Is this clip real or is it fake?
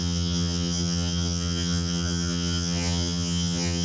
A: fake